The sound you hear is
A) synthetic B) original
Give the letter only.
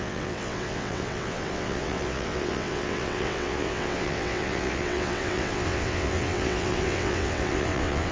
A